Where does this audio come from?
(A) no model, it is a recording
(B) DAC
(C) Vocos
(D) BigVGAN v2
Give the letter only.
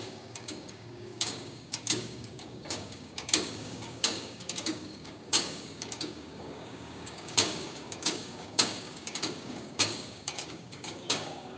B